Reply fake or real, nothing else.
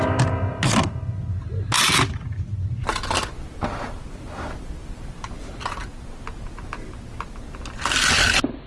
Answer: real